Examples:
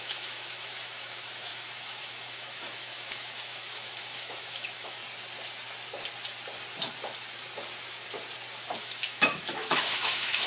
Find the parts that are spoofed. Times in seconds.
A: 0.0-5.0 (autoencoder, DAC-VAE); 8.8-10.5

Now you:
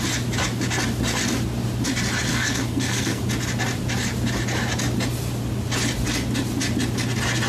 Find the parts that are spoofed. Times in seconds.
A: 2.3-3.2 (codec, SNAC)

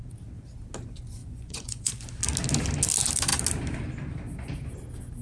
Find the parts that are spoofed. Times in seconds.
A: 1.2-1.9 (vocoder, Vocos)

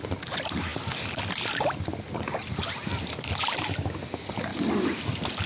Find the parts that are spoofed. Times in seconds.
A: none

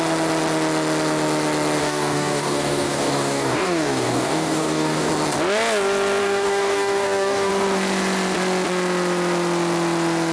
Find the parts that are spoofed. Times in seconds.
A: 1.8-5.1 (codec, DAC); 6.2-7.5

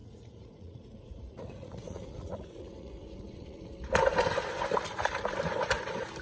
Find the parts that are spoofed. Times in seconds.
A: 0.0-3.7 (vocoder, Vocos)